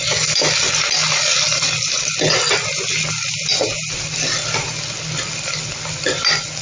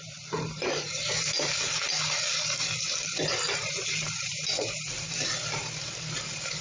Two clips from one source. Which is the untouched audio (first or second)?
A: first